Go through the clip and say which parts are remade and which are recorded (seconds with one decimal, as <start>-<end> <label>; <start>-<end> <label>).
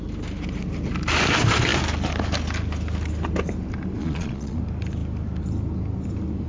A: 0.0-4.0 recorded; 4.0-4.6 remade; 4.6-6.5 recorded